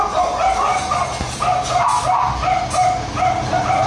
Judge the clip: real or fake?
real